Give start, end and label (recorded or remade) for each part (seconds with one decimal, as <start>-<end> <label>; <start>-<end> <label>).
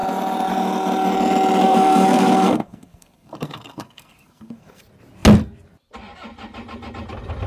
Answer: 0.0-1.6 recorded; 1.6-4.8 remade; 4.8-7.5 recorded